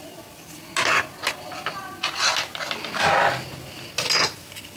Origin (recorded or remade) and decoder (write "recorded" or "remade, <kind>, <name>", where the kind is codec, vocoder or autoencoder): recorded